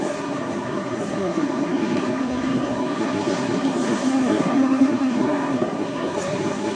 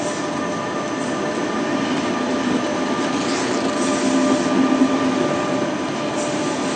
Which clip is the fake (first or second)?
first